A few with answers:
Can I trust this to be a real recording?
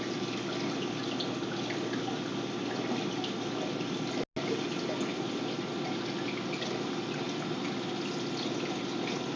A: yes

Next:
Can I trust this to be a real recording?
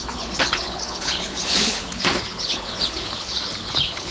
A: no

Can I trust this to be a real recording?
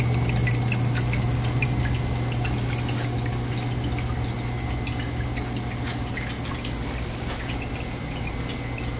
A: yes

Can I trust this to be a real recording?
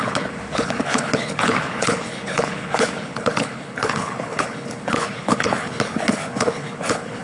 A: no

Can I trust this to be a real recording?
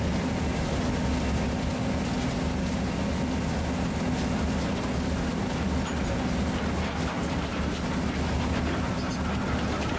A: yes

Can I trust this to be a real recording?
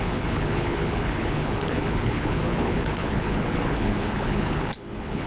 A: no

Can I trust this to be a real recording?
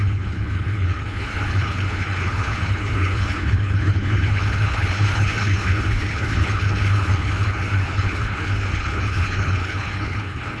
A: no